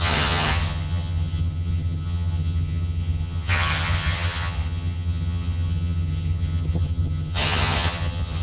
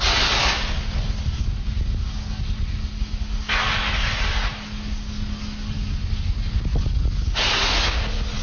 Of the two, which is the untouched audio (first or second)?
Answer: second